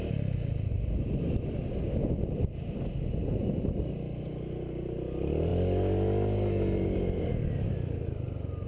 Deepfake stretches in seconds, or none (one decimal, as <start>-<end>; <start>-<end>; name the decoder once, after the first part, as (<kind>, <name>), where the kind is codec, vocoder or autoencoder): none